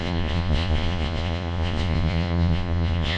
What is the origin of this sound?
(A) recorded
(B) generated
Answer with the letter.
B